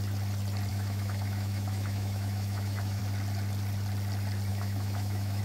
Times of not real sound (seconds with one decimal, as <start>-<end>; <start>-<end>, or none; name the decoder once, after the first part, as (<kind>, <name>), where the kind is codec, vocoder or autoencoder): 0.7-3.0 (autoencoder, DAC-VAE); 4.5-5.4